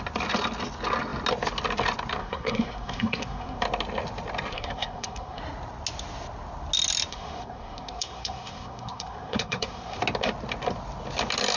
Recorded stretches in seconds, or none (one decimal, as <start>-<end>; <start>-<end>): 0.0-2.2; 3.6-4.5; 5.4-7.1; 10.0-11.6